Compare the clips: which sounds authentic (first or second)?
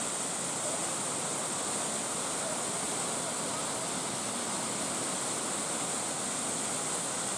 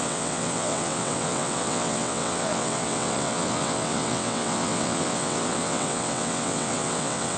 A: first